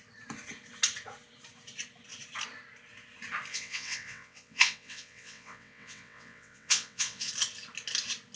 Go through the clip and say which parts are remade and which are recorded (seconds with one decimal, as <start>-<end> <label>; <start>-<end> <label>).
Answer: 0.0-3.5 recorded; 3.5-7.3 remade; 7.3-8.4 recorded